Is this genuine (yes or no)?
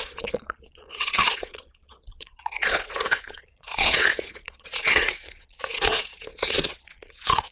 no